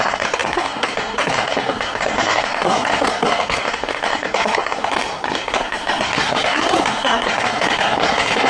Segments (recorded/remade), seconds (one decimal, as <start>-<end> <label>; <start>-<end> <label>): 0.0-8.5 remade